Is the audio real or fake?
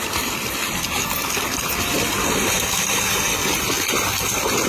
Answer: real